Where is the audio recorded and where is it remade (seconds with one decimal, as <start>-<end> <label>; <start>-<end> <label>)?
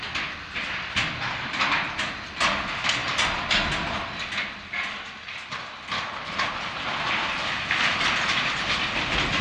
0.0-9.4 recorded